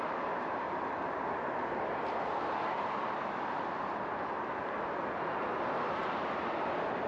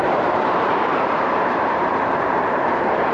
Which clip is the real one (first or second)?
first